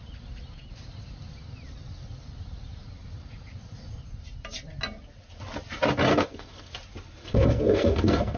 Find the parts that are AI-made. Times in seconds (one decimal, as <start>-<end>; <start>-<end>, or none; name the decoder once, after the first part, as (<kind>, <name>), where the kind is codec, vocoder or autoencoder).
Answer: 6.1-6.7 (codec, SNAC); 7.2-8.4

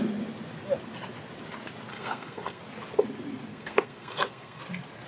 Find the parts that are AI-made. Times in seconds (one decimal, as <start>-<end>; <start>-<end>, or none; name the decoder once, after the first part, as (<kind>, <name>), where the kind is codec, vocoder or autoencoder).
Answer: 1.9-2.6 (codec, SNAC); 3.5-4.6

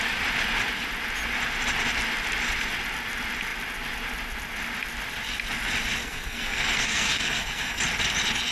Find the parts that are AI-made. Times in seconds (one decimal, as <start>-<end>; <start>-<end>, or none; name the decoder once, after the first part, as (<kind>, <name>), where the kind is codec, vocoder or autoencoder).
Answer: 6.0-7.8 (codec, SNAC)